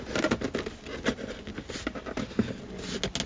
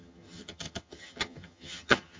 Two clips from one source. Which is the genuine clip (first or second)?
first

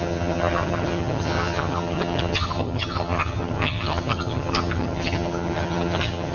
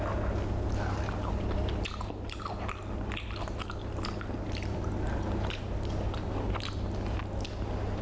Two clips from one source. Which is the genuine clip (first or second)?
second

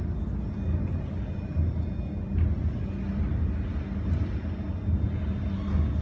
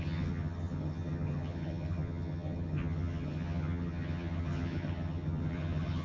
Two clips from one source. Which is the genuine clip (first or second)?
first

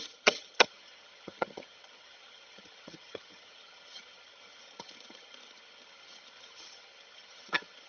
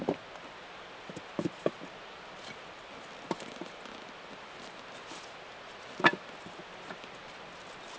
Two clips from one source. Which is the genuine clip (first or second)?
second